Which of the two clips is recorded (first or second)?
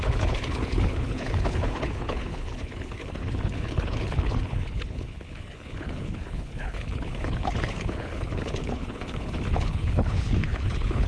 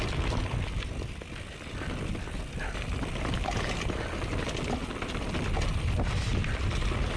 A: second